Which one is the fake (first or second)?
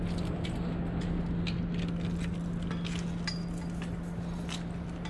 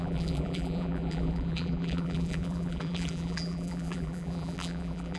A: second